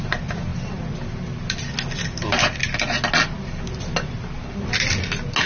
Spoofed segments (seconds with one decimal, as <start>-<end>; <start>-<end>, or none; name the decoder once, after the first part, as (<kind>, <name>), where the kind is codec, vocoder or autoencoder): none